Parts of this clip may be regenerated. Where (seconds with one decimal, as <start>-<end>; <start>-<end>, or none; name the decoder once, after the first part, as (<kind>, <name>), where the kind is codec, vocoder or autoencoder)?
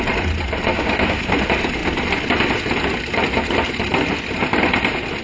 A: 0.7-1.3 (autoencoder, DAC-VAE)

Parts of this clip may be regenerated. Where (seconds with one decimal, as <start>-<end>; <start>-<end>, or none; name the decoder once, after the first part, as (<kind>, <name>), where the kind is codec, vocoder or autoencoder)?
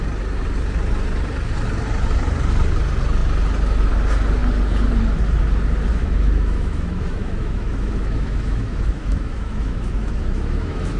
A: 5.9-11.0 (autoencoder, DAC-VAE)